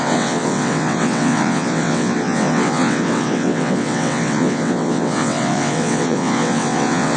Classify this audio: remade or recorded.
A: remade